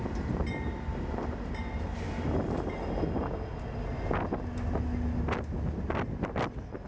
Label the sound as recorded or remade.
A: recorded